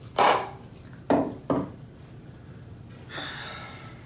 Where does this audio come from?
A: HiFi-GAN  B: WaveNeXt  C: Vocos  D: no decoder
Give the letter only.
D